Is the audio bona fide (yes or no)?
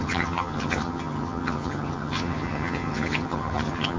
no